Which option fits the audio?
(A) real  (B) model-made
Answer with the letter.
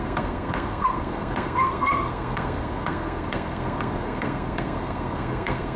B